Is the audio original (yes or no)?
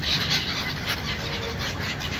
yes